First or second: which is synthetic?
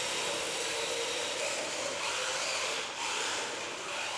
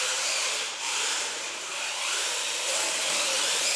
second